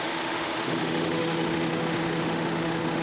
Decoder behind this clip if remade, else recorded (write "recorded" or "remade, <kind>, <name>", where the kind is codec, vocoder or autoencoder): remade, autoencoder, DAC-VAE